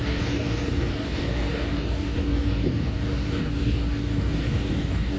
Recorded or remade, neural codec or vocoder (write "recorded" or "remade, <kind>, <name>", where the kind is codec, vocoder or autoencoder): remade, codec, DAC